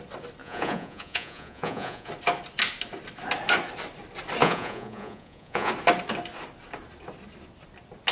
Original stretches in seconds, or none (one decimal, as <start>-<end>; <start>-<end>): 0.0-0.4; 2.1-4.4; 5.7-8.1